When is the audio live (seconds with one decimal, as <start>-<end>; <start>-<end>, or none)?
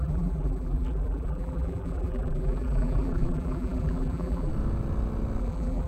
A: 4.5-5.4